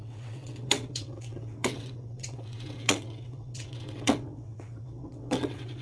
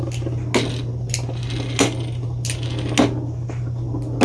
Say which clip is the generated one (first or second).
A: first